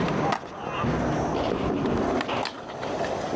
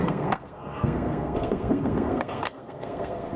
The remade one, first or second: second